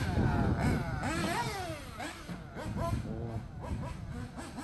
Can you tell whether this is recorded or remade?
recorded